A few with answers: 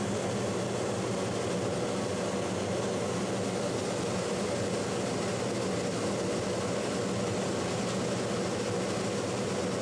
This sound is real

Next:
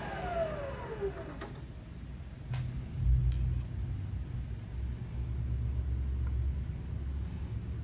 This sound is real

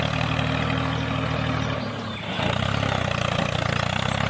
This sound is real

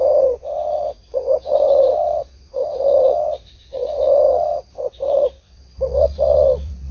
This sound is fake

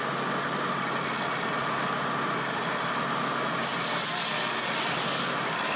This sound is real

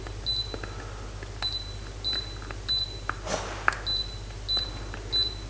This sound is real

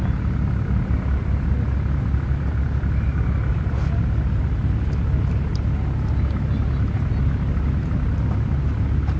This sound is real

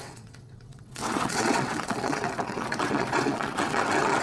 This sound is fake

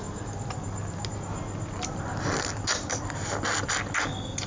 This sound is real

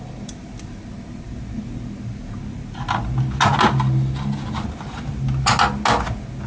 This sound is real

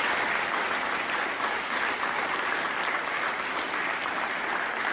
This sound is real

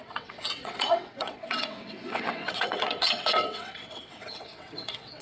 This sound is fake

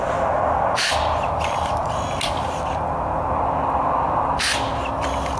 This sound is real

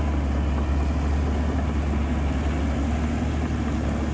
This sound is real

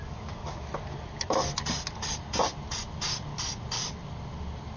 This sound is real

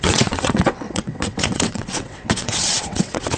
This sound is fake